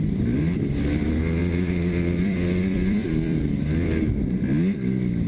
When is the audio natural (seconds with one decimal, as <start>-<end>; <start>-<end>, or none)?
0.0-1.4; 3.4-5.3